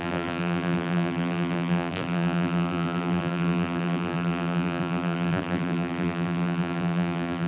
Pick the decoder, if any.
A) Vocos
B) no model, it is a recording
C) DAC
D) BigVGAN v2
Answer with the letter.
D